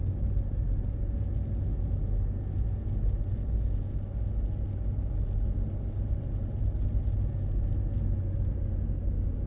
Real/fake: real